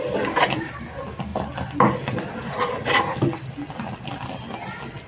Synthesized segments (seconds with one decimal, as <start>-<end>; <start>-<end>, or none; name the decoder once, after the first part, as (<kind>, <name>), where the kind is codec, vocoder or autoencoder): none